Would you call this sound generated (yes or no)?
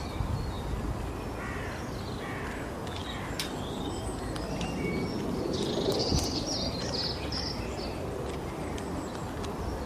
no